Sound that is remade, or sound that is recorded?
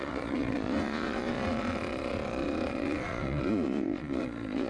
remade